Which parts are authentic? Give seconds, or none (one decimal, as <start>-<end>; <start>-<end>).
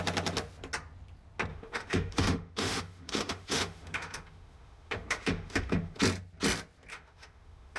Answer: 0.0-1.5; 6.0-6.9